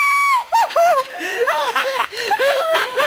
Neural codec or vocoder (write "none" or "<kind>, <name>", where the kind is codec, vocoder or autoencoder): autoencoder, DAC-VAE